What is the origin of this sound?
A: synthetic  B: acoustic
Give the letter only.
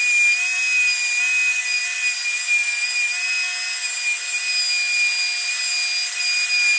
B